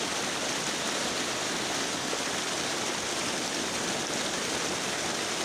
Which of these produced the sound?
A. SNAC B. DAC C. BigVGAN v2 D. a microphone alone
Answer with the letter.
D